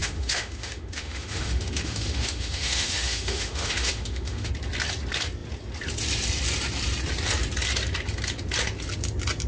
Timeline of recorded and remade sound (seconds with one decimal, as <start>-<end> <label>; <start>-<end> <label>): 0.0-4.5 remade; 4.5-9.5 recorded